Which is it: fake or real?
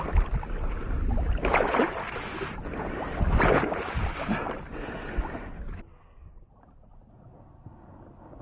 real